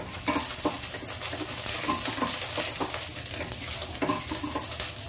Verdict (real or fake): real